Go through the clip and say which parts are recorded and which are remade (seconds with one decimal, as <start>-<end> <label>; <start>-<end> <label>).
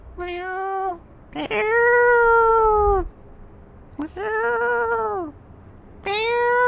0.0-0.9 remade; 0.9-6.7 recorded